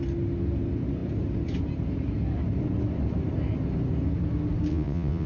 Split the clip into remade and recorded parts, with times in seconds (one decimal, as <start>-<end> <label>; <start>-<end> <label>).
0.0-4.7 recorded; 4.7-5.3 remade